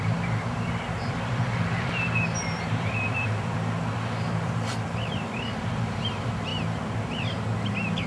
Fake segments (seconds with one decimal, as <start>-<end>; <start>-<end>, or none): 0.0-6.5

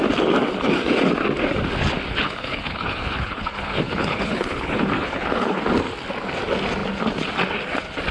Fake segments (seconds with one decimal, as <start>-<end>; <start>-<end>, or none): 2.1-5.6